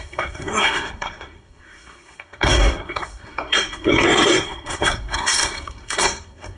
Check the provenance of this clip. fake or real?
fake